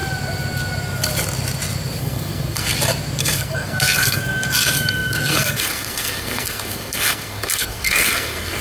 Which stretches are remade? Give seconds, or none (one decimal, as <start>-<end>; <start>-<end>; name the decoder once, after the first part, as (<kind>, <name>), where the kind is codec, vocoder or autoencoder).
2.0-2.7 (codec, SNAC); 3.2-8.6